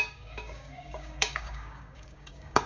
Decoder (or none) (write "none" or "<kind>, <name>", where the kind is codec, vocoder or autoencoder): codec, DAC